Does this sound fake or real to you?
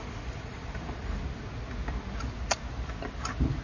real